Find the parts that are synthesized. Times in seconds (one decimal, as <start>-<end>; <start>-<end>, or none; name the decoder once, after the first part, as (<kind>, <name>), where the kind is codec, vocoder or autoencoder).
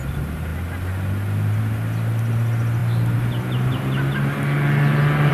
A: none